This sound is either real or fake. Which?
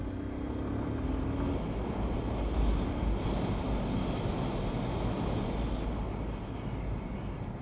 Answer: real